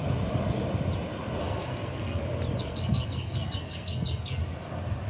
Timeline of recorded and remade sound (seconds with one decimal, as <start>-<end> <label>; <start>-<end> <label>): 0.0-1.4 recorded; 1.4-2.2 remade; 2.2-2.6 recorded; 2.6-4.4 remade; 4.4-5.1 recorded